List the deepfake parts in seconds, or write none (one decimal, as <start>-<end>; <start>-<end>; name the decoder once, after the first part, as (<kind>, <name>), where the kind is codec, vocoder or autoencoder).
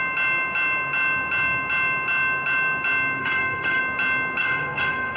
3.2-3.8 (codec, SNAC); 4.4-5.2